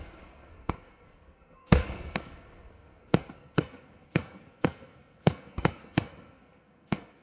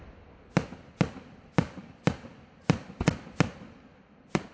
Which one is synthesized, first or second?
first